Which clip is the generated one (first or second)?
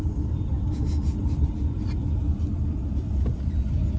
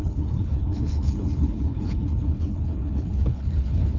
second